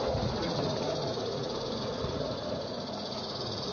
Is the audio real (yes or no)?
no